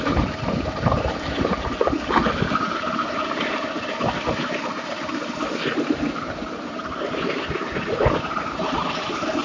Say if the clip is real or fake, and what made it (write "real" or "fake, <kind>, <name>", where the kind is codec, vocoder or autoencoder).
fake, vocoder, BigVGAN v2